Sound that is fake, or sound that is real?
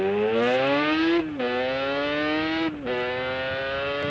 real